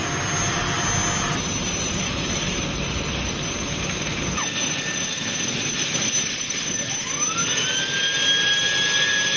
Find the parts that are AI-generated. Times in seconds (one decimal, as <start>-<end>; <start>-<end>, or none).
1.9-3.3; 6.2-6.9